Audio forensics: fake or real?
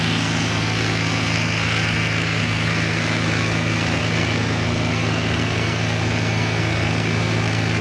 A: fake